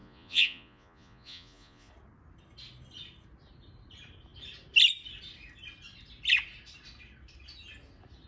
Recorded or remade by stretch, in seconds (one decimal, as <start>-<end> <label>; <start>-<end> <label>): 0.0-1.9 remade; 1.9-8.3 recorded